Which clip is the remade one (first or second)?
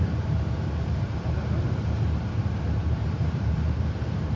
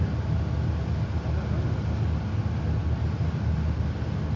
first